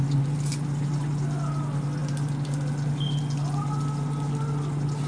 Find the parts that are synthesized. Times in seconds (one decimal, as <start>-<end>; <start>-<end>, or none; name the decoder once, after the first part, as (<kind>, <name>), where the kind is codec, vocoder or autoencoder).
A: none